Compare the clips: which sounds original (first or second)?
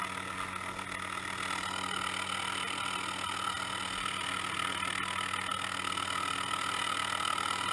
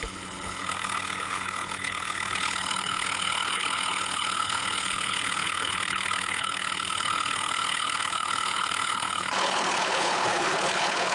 first